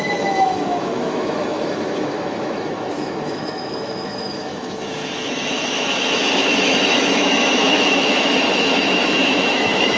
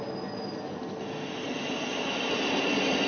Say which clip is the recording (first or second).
second